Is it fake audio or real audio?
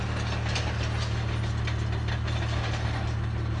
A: real